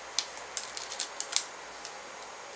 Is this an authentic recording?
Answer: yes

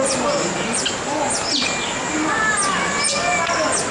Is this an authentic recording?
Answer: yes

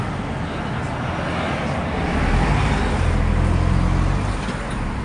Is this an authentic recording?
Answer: yes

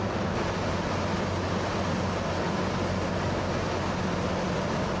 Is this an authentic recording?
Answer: yes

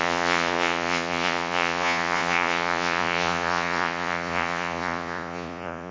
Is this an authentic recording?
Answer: no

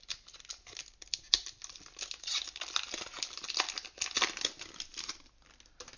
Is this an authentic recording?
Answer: yes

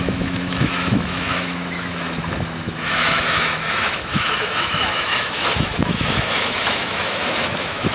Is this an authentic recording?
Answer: no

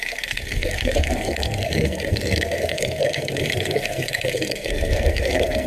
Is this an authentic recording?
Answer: no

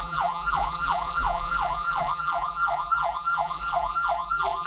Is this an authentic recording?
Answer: no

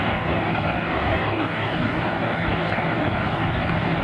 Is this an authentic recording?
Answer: no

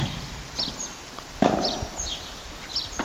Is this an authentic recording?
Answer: yes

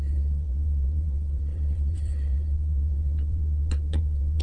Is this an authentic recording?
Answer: no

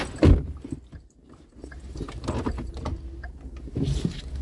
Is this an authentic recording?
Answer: yes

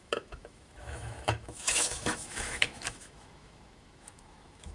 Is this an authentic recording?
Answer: no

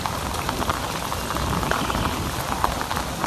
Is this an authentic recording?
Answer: yes